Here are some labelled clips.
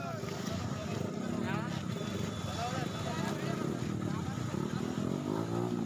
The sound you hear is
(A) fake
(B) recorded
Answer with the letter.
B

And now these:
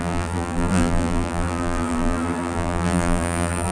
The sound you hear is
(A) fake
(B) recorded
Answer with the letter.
A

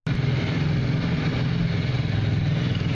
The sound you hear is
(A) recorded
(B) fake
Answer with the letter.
A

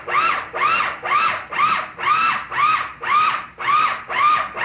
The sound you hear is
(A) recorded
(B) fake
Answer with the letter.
A